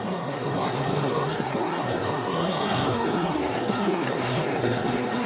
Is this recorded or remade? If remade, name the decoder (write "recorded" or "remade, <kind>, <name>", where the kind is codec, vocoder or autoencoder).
remade, codec, SNAC